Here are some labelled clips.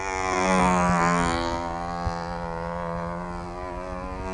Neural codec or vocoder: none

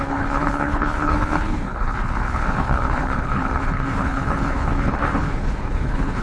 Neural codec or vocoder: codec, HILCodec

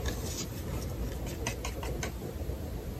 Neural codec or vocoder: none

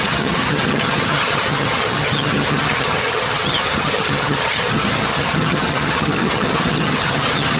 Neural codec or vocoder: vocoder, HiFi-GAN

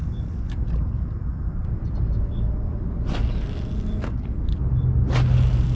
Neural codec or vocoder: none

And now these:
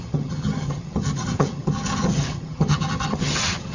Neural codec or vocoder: vocoder, HiFi-GAN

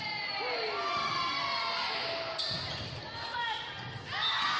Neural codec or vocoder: none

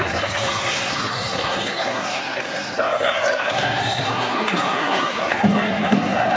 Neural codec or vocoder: codec, SNAC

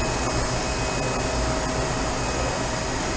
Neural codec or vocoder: none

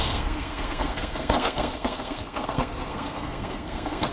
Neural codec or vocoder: codec, SNAC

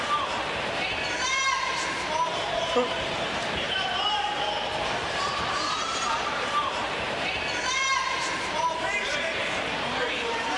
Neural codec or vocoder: vocoder, BigVGAN v2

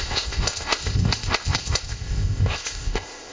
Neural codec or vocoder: codec, ZipCodec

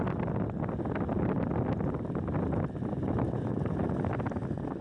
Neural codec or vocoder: none